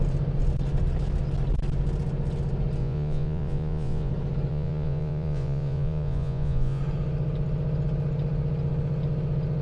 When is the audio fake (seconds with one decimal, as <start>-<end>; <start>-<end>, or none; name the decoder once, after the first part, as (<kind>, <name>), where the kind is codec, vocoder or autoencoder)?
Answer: 2.8-4.1 (vocoder, Vocos); 4.5-6.8